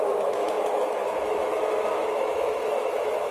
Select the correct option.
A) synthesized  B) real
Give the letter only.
A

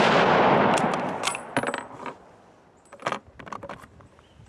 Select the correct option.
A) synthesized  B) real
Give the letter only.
B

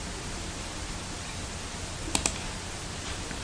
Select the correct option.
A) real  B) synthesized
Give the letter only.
A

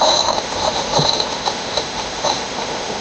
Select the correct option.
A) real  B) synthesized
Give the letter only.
B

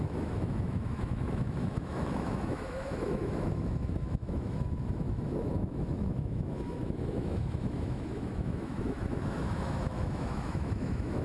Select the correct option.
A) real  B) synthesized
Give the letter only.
B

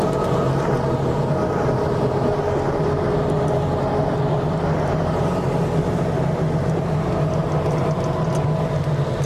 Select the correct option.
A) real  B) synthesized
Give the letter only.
A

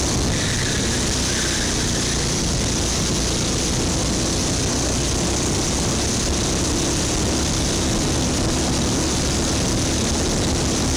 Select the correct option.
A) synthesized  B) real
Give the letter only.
B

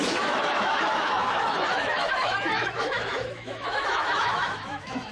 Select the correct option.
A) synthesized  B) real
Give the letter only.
A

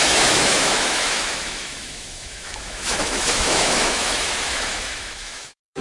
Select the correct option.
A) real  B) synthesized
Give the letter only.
B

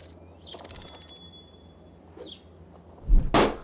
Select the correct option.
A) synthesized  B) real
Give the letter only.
B